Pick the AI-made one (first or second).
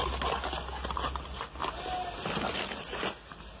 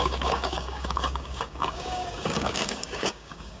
second